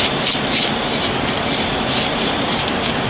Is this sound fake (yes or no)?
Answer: no